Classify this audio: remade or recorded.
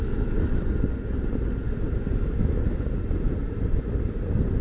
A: recorded